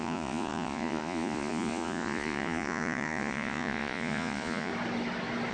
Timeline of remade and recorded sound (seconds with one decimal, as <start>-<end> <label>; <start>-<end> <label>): 0.0-4.7 remade; 4.7-5.5 recorded